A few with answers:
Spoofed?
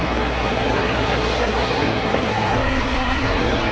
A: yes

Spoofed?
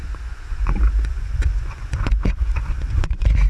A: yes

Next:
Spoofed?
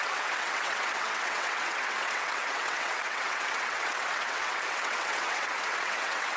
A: yes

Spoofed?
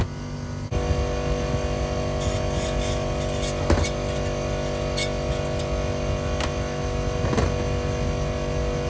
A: no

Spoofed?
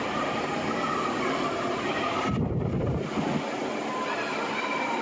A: yes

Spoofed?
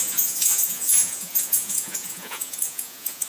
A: yes